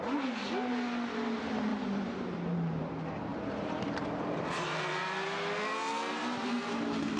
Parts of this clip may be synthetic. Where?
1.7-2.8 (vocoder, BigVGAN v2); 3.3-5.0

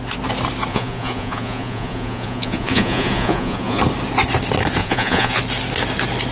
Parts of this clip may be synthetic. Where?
0.7-3.8 (vocoder, Vocos); 4.8-5.4

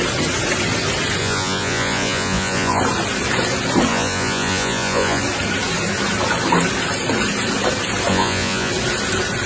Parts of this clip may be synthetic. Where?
1.2-2.8 (vocoder, Vocos); 3.9-5.2; 8.1-8.7

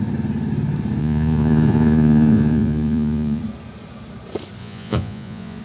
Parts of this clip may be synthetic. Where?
1.0-3.4 (vocoder, Vocos); 4.6-5.6

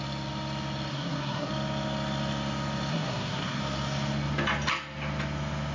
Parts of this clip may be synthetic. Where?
0.9-1.5 (codec, SNAC); 2.9-3.6